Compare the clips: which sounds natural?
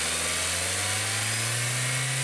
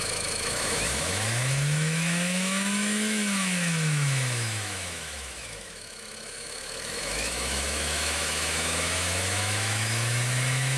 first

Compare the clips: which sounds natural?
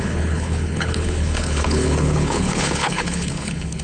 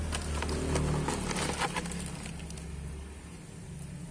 second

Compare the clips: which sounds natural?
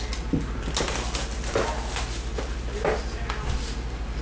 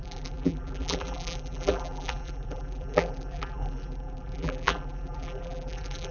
first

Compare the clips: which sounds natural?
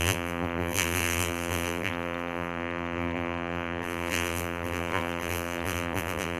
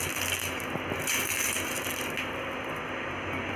second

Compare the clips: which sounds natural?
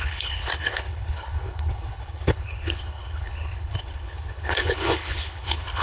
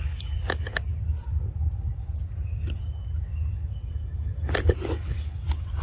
second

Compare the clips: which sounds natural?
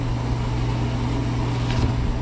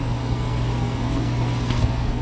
first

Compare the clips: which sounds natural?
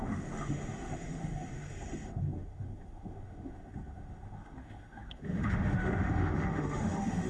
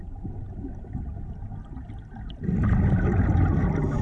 second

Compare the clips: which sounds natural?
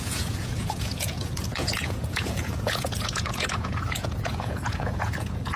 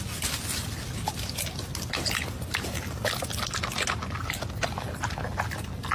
second